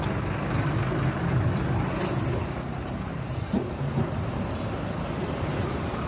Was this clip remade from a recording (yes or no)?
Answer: no